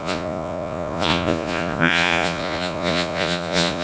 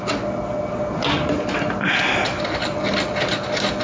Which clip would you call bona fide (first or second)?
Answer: second